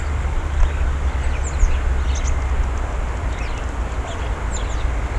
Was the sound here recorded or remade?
recorded